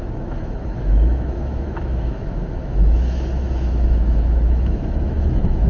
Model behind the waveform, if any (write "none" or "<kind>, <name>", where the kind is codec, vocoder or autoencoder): autoencoder, DAC-VAE